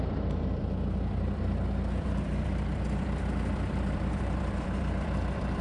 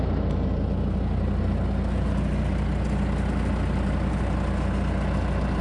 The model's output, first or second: first